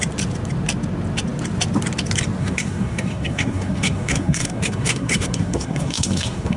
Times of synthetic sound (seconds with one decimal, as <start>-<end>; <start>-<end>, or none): 2.4-6.6